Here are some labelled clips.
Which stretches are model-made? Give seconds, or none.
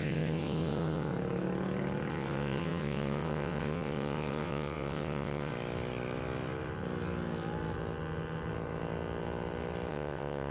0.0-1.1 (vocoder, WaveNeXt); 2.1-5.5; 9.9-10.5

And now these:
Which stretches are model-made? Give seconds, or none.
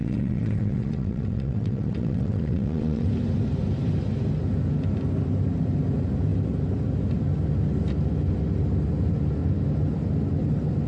0.0-3.1 (vocoder, WaveNeXt)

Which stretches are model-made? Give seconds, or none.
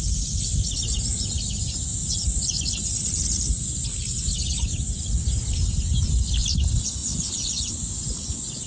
none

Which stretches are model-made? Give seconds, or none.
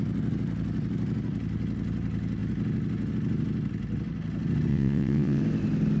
4.7-5.4 (vocoder, WaveNeXt)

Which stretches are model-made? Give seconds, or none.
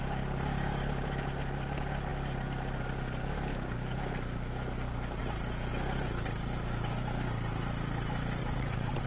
8.4-9.1 (vocoder, WaveNeXt)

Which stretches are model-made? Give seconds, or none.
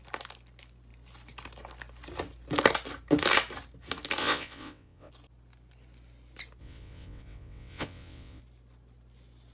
4.2-5.1 (vocoder, WaveNeXt); 6.6-8.4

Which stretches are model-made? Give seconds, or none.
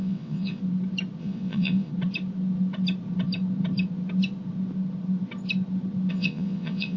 0.0-0.6 (vocoder, WaveNeXt); 1.2-1.9; 6.1-7.0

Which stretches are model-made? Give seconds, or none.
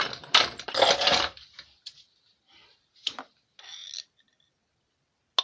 none